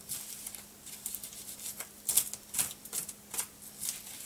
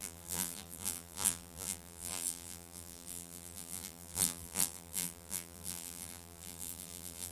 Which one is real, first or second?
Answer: first